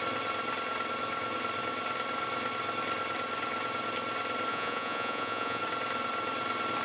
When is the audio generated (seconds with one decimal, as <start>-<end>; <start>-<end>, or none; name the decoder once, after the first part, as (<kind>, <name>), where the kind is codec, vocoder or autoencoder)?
4.5-5.6 (vocoder, Vocos)